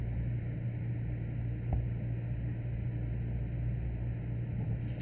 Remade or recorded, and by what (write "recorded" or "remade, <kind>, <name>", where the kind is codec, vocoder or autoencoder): recorded